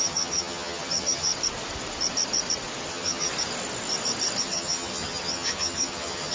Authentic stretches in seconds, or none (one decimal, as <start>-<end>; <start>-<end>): 1.3-2.9; 3.3-4.4